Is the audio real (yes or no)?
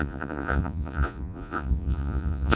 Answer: no